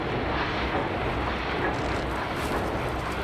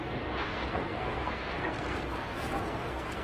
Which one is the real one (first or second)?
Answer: first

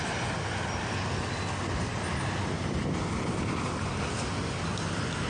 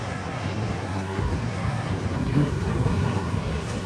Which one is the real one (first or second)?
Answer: first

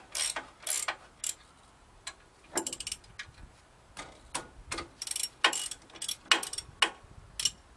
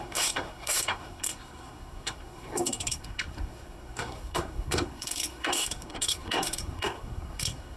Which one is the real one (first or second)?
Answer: first